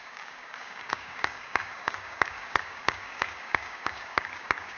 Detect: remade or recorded remade